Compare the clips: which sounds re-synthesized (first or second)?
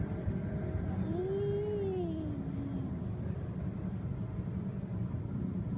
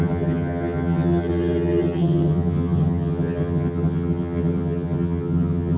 second